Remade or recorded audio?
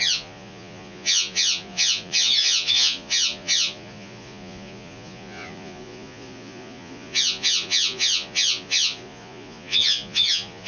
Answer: remade